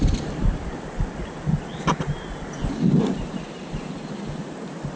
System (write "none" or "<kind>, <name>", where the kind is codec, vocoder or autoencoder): none